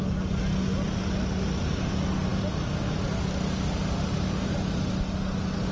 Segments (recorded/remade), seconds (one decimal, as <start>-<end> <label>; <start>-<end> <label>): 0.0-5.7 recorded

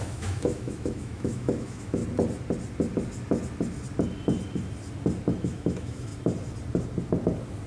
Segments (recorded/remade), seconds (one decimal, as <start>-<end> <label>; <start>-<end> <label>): 0.0-2.0 remade; 2.0-5.4 recorded; 5.4-6.1 remade; 6.1-7.7 recorded

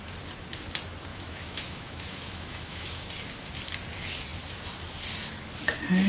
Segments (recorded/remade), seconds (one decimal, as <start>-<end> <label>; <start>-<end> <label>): 0.0-1.1 recorded; 1.1-3.1 remade; 3.1-6.1 recorded

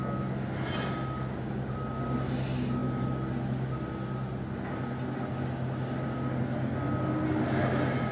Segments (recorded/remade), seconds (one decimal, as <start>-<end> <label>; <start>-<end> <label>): 0.0-8.1 recorded

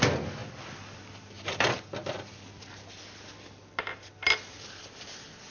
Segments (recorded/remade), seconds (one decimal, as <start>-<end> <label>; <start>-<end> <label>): 0.0-5.5 recorded

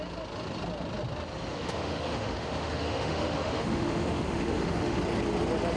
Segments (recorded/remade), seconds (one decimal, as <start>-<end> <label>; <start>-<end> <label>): 0.0-1.5 recorded; 1.5-5.0 remade; 5.0-5.8 recorded

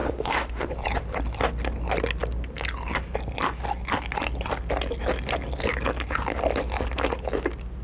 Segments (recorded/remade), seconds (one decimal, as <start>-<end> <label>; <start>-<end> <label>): 0.0-0.7 remade; 0.7-7.8 recorded

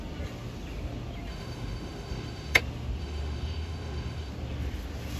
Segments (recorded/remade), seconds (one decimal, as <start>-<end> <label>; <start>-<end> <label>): 0.0-1.3 recorded; 1.3-2.6 remade; 2.6-3.0 recorded; 3.0-4.3 remade; 4.3-5.2 recorded